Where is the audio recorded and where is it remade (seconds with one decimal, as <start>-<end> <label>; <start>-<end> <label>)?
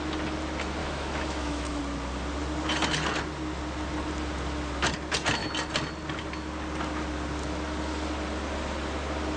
0.0-0.8 recorded; 0.8-1.8 remade; 1.8-9.4 recorded